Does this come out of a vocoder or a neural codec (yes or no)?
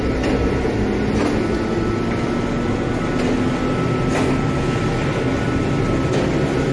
no